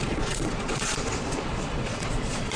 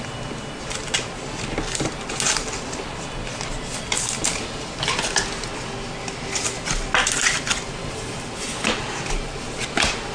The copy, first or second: first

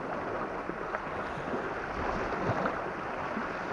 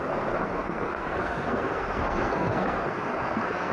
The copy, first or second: second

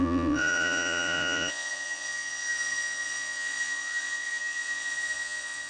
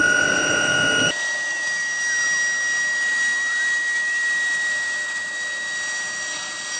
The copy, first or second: first